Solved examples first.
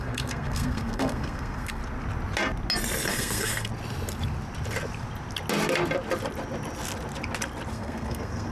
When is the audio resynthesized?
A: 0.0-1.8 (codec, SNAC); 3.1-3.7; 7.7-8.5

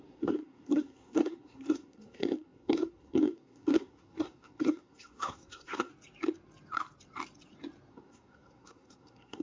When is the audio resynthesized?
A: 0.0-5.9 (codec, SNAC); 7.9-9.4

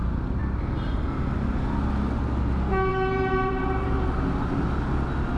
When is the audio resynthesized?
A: none